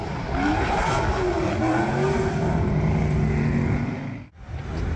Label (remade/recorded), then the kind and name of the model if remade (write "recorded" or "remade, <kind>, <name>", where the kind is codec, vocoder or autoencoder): recorded